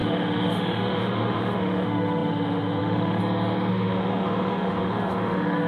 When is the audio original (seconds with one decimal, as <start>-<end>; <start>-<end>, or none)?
3.2-3.7